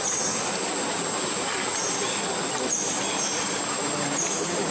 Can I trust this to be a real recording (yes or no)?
yes